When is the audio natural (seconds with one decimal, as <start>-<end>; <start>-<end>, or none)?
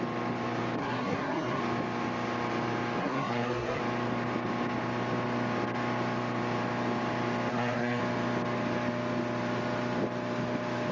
0.0-0.8; 1.6-3.0; 3.8-7.5; 8.0-10.9